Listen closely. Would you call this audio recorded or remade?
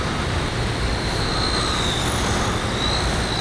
recorded